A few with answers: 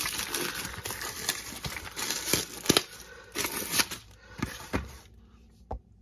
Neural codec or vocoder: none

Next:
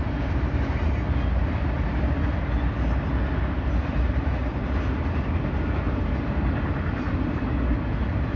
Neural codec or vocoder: none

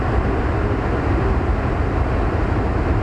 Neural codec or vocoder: none